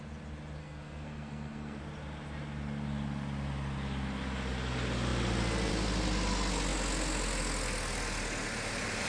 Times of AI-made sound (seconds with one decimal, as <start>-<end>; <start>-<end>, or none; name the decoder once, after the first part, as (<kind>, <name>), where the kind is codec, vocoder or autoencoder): 0.6-1.8 (codec, SNAC)